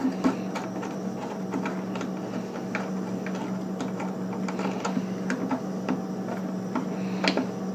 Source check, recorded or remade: recorded